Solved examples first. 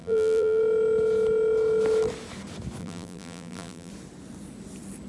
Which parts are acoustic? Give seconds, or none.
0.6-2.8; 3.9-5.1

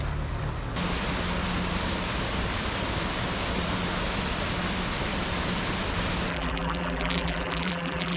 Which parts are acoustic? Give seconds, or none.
0.0-6.3

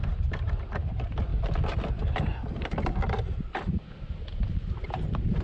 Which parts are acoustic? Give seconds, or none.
1.3-4.5

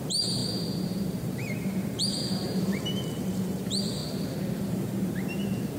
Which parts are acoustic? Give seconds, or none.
4.0-4.6